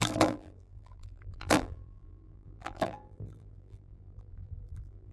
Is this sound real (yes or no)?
no